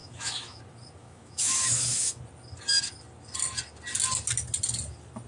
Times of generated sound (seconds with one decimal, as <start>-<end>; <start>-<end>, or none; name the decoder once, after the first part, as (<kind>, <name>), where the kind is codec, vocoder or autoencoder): 0.0-0.6 (autoencoder, DAC-VAE); 1.0-2.2